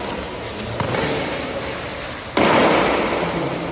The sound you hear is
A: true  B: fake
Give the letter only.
A